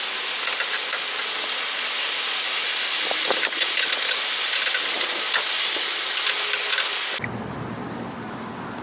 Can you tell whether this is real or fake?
real